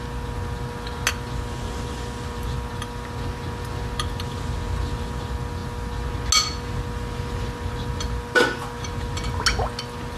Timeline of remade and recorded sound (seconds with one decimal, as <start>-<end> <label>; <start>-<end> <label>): 0.0-10.2 recorded